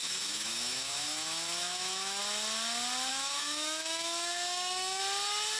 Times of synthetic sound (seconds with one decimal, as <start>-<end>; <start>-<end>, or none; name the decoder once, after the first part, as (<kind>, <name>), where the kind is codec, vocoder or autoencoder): 0.0-2.2 (autoencoder, DAC-VAE); 3.1-5.0